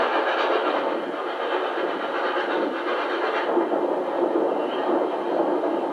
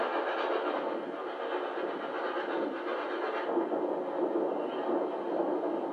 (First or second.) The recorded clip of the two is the second